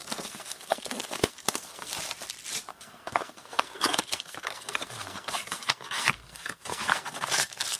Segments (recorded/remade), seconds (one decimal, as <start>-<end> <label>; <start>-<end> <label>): 0.0-1.9 remade; 1.9-2.7 recorded; 2.7-7.8 remade